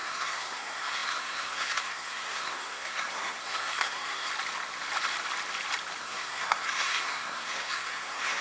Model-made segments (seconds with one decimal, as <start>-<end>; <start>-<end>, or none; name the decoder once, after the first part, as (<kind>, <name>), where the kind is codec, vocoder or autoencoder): 0.0-4.3 (codec, SNAC); 6.0-8.4